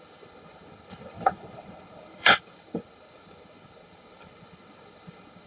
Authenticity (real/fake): fake